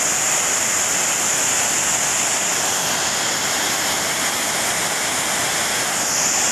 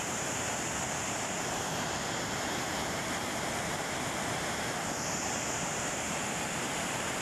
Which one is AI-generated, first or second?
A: second